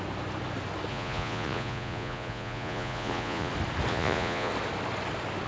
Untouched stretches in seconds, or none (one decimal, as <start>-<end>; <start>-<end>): 0.0-0.9; 3.5-3.9; 4.5-5.5